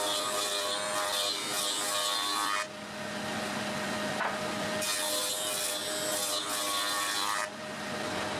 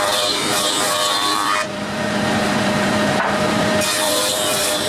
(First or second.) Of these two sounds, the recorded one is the first